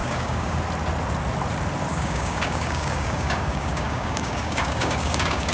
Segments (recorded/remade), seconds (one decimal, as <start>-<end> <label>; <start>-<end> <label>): 0.0-0.6 remade; 0.6-1.9 recorded; 1.9-5.5 remade

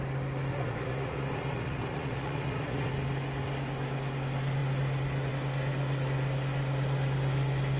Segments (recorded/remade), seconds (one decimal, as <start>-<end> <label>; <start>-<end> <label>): 0.0-0.5 recorded; 0.5-2.9 remade; 2.9-7.8 recorded

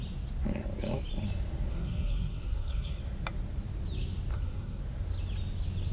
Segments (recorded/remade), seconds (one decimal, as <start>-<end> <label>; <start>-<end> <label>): 0.0-1.7 recorded; 1.7-3.0 remade; 3.0-4.3 recorded; 4.3-4.8 remade; 4.8-5.9 recorded